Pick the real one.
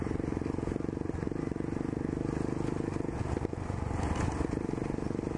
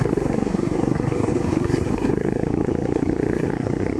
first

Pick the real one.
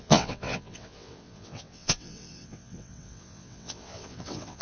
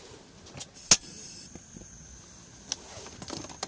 second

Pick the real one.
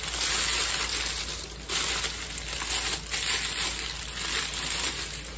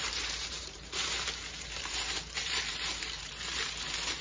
first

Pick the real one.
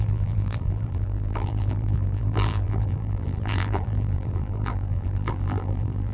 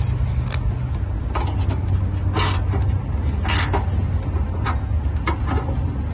second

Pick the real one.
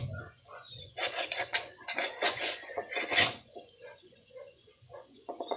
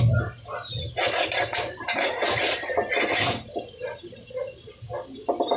second